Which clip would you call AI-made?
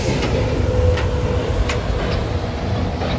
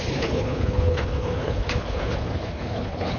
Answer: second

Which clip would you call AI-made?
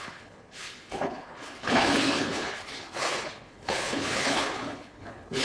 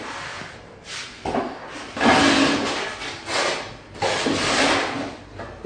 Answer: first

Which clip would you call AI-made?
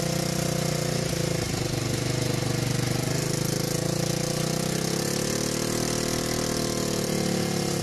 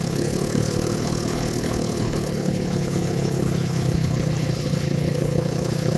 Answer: second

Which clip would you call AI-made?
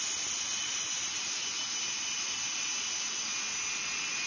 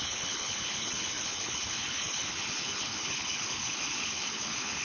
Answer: second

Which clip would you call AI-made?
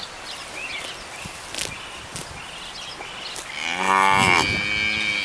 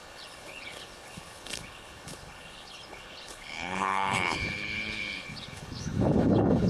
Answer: second